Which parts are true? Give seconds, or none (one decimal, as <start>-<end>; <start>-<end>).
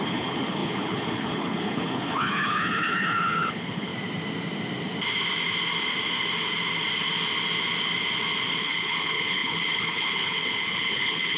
3.9-8.6